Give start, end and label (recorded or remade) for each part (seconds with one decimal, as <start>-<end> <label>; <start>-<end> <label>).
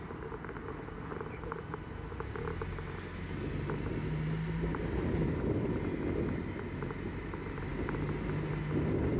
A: 0.0-4.7 recorded; 4.7-6.4 remade; 6.4-9.2 recorded